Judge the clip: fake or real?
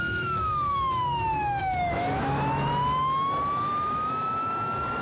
fake